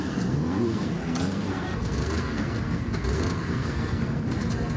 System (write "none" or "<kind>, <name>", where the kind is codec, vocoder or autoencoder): codec, SNAC